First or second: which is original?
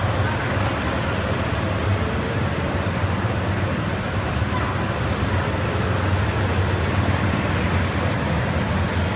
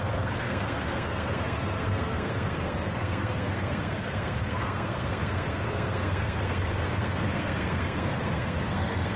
first